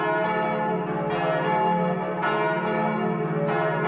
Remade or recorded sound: recorded